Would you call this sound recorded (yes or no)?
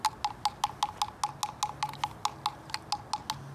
yes